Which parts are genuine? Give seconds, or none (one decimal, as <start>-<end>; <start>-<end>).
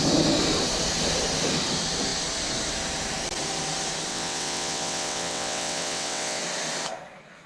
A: 0.0-4.1; 6.4-7.5